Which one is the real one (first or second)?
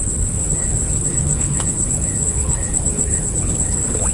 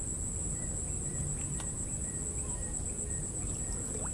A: second